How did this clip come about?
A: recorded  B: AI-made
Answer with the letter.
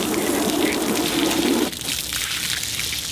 A